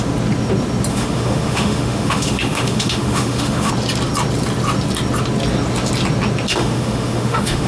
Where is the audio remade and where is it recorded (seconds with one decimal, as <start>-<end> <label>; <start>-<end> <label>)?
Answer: 0.0-0.9 recorded; 0.9-3.7 remade; 3.7-6.5 recorded; 6.5-7.7 remade